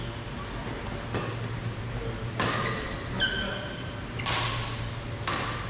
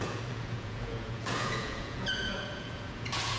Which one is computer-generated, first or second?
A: second